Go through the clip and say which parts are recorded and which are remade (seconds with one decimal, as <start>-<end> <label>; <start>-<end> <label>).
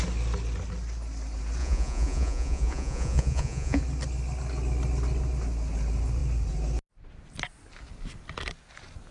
0.0-1.6 recorded; 1.6-3.8 remade; 3.8-9.1 recorded